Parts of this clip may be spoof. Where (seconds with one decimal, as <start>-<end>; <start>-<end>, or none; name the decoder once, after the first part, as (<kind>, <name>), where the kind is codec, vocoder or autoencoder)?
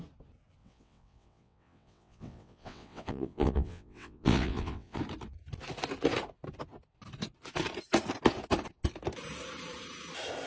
0.6-5.0 (vocoder, WaveNeXt)